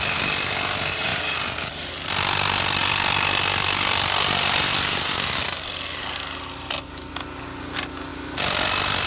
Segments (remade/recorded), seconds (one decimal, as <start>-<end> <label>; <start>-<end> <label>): 0.0-2.8 recorded; 2.8-7.1 remade; 7.1-9.1 recorded